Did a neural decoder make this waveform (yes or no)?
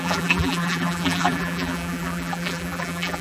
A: yes